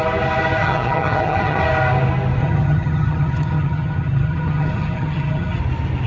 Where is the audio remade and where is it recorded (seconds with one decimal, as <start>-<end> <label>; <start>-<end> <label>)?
0.0-0.6 recorded; 0.6-1.6 remade; 1.6-2.4 recorded; 2.4-5.6 remade; 5.6-6.1 recorded